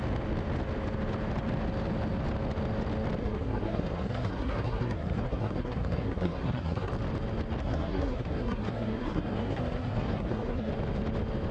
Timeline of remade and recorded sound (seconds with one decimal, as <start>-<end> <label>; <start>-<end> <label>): 0.0-3.2 recorded; 3.2-6.9 remade; 6.9-7.6 recorded; 7.6-10.7 remade; 10.7-11.5 recorded